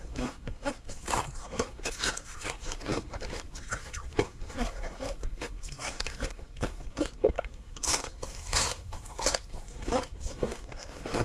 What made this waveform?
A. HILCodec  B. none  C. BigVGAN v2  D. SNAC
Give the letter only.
D